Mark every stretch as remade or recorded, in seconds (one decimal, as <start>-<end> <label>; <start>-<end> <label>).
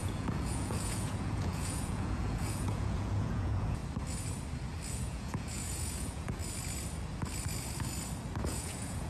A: 0.0-3.8 remade; 3.8-4.9 recorded; 4.9-6.4 remade; 6.4-8.4 recorded; 8.4-9.1 remade